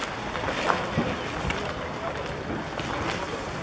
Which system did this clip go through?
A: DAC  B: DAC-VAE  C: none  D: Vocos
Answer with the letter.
C